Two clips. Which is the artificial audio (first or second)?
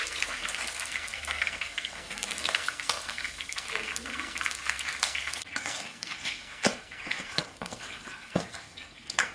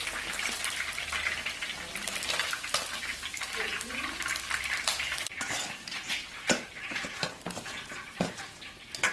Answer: first